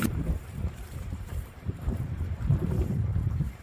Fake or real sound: fake